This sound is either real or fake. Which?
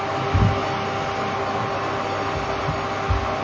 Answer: real